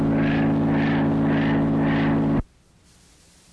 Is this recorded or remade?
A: recorded